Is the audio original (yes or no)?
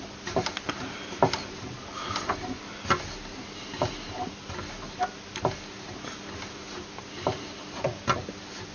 yes